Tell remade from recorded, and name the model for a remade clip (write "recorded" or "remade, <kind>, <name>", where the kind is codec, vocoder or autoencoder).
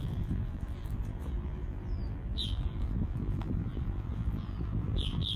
remade, vocoder, BigVGAN v2